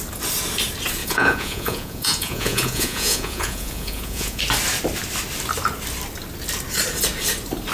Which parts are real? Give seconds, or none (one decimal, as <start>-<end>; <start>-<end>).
0.0-1.0; 4.4-7.7